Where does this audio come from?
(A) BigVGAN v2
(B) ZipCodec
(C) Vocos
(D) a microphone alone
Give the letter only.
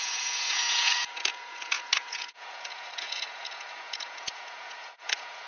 C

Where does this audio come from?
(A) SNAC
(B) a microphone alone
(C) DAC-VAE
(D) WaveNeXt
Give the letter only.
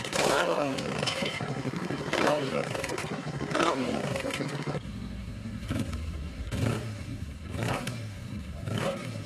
A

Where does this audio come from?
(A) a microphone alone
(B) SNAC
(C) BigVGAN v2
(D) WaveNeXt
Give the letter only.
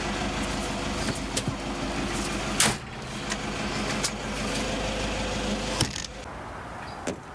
A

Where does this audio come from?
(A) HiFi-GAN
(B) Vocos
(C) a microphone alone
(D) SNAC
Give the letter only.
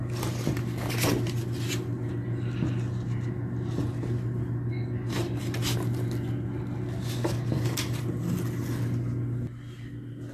C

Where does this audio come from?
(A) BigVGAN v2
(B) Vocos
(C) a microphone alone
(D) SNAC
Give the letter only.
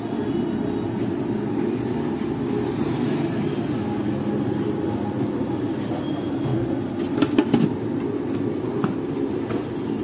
C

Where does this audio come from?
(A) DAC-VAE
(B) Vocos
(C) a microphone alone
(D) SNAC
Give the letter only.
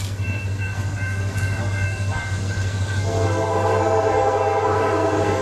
D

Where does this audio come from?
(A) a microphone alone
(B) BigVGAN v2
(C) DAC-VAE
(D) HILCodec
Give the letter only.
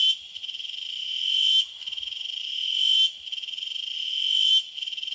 C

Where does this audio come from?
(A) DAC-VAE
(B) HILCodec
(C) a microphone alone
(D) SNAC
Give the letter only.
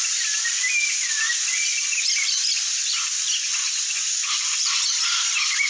C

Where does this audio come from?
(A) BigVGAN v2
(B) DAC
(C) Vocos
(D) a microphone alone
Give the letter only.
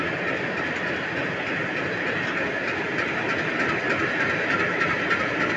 D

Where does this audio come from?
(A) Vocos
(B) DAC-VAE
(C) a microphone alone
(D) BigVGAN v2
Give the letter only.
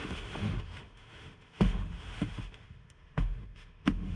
B